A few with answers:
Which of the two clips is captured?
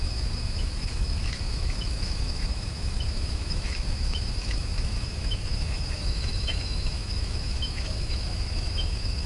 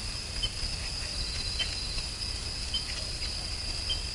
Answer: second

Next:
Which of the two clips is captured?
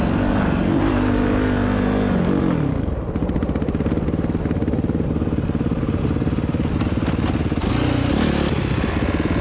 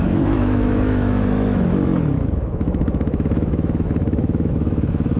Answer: first